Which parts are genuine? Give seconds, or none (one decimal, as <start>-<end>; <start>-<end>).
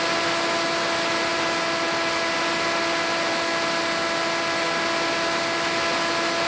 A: 0.0-6.5